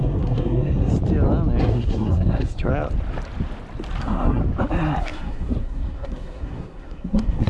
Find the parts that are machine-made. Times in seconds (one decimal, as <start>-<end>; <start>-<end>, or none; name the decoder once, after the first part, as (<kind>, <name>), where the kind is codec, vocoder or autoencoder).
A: 0.0-0.9 (codec, SNAC); 1.6-2.7; 4.0-4.4; 5.0-7.5